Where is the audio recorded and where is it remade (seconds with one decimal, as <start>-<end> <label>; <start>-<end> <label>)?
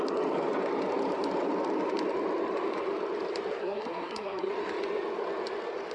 0.0-3.6 recorded; 3.6-4.5 remade; 4.5-5.9 recorded